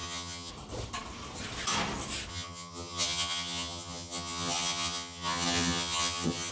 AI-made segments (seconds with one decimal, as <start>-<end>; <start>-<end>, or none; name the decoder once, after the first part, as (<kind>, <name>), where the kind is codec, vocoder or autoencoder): 0.0-0.5 (vocoder, HiFi-GAN); 2.3-6.5